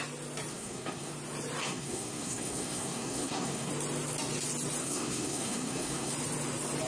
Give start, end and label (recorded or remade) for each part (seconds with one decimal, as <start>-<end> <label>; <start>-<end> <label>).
0.0-0.5 recorded; 0.5-1.1 remade; 1.1-1.6 recorded; 1.6-3.7 remade; 3.7-4.8 recorded; 4.8-6.1 remade; 6.1-6.9 recorded